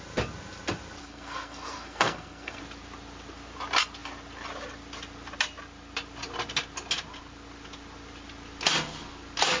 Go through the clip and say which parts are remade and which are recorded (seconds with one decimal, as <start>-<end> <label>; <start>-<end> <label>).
0.0-1.0 recorded; 1.0-2.6 remade; 2.6-9.6 recorded